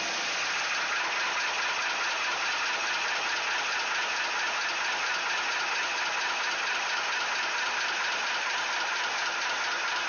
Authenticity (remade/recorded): recorded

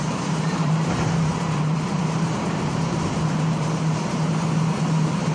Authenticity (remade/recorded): remade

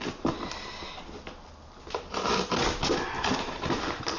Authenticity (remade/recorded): recorded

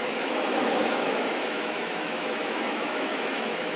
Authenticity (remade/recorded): remade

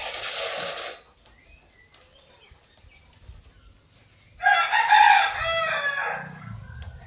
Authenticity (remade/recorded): recorded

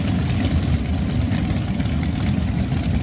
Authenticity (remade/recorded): recorded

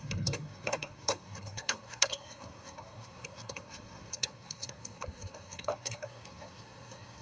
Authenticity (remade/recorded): remade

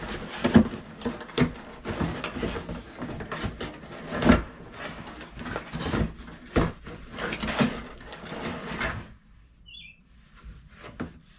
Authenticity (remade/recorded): recorded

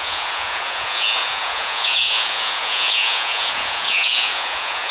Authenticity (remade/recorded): remade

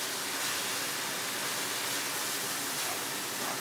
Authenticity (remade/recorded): recorded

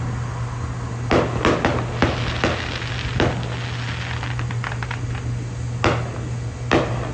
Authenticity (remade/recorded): recorded